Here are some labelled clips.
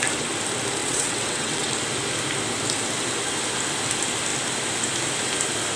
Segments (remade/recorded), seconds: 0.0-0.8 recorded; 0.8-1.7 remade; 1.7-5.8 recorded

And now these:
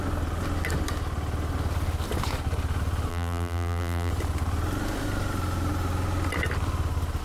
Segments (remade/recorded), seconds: 0.0-3.1 recorded; 3.1-4.1 remade; 4.1-7.2 recorded

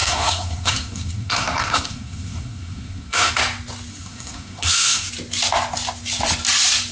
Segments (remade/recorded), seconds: 0.0-3.3 remade; 3.3-3.9 recorded; 3.9-5.1 remade; 5.1-6.9 recorded

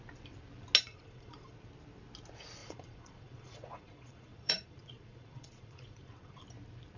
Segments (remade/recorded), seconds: 0.0-0.9 recorded; 0.9-1.5 remade; 1.5-2.6 recorded; 2.6-6.4 remade; 6.4-7.0 recorded

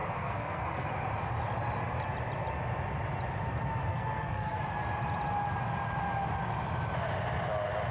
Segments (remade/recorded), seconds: 0.0-0.9 remade; 0.9-3.9 recorded; 3.9-4.6 remade; 4.6-7.9 recorded

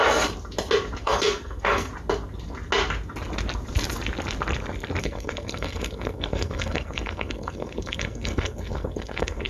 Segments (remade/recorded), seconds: 0.0-1.0 recorded; 1.0-1.9 remade; 1.9-5.0 recorded; 5.0-9.5 remade

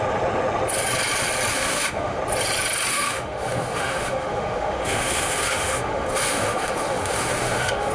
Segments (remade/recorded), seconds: 0.0-1.5 recorded; 1.5-2.2 remade; 2.2-2.9 recorded; 2.9-7.9 remade